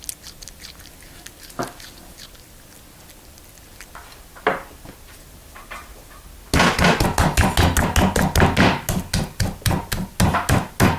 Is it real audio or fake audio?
real